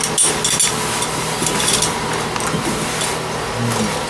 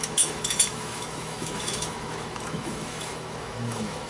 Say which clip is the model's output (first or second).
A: second